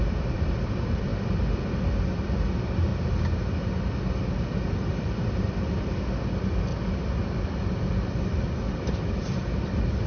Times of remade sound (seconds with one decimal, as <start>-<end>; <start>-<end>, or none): 0.0-1.1; 2.0-2.9; 4.9-6.7; 7.5-10.1